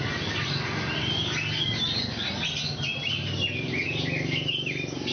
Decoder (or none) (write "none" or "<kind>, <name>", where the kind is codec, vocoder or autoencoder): none